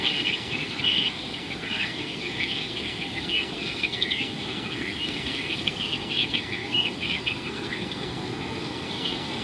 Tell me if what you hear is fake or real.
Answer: fake